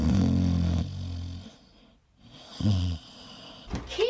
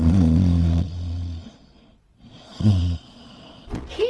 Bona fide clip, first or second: first